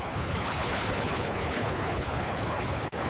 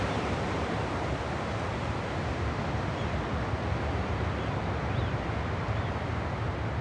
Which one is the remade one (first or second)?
first